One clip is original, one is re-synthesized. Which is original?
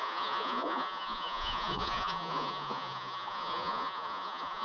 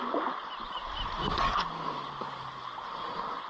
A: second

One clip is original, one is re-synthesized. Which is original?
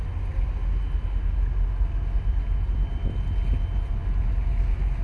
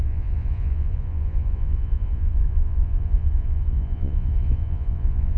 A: first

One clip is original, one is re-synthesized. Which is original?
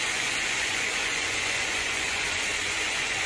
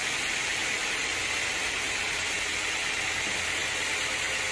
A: second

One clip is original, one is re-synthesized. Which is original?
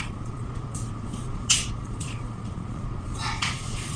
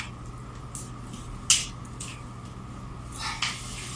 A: second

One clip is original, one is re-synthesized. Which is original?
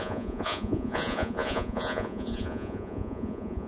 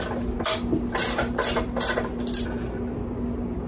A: second